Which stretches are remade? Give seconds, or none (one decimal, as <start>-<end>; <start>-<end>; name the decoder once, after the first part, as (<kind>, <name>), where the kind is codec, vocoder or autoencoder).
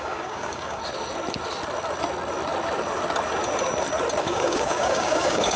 0.0-0.8 (codec, DAC); 4.2-5.6